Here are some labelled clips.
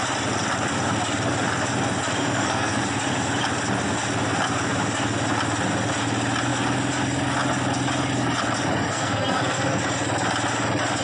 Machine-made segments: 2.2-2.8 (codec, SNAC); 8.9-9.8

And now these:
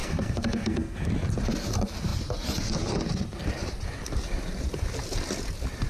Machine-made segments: 0.0-1.1 (codec, SNAC)

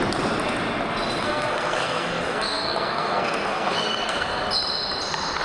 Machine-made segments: 1.2-4.4 (codec, SNAC)